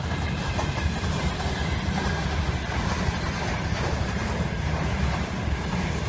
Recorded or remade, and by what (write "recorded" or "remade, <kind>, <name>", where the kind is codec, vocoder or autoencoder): recorded